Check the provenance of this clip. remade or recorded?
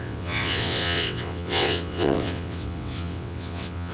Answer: remade